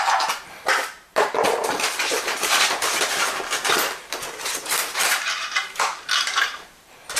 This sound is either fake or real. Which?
fake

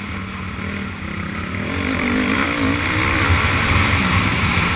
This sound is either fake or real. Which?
real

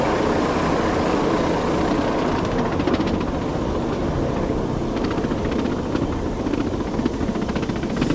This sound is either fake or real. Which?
real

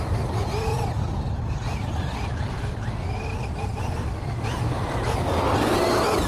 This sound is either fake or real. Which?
real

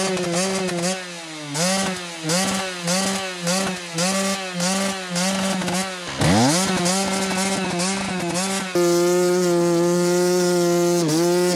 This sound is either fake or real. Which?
real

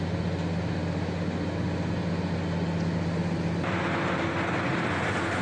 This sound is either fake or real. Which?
real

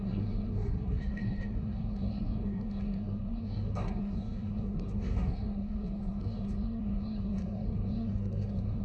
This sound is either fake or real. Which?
fake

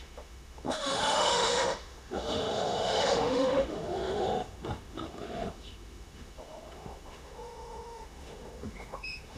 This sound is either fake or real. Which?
fake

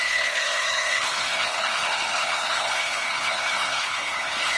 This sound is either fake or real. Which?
fake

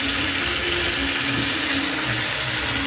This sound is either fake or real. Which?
real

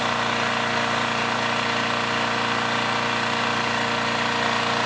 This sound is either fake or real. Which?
real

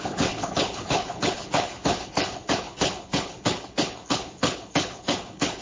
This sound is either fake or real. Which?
fake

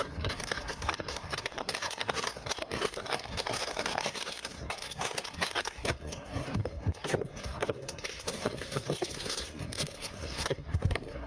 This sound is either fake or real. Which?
fake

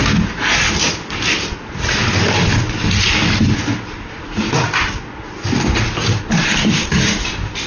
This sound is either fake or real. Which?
real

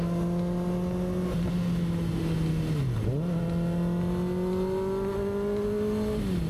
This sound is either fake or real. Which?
real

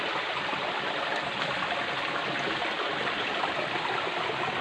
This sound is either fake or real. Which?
real